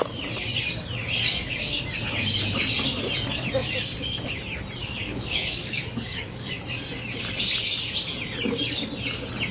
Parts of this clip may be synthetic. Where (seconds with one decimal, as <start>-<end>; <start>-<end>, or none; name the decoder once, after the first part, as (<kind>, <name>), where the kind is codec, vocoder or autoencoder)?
1.3-1.8 (codec, DAC); 4.8-6.5